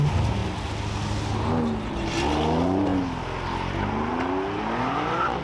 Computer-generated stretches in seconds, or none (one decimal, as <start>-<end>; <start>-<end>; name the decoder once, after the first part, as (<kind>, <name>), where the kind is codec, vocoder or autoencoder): none